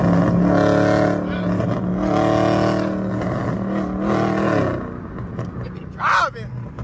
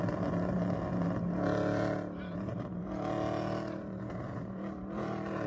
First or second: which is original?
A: first